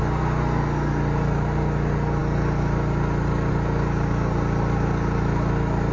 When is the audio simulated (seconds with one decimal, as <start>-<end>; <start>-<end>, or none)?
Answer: none